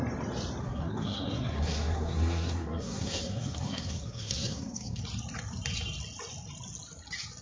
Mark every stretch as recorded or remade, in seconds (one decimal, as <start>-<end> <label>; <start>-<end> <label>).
0.0-0.6 recorded; 0.6-5.0 remade; 5.0-7.4 recorded